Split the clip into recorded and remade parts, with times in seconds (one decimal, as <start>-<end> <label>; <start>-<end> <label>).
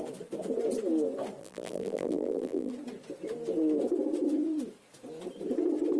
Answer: 0.0-1.4 recorded; 1.4-2.7 remade; 2.7-6.0 recorded